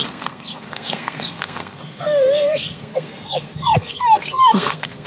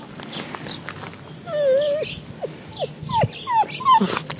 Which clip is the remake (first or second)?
first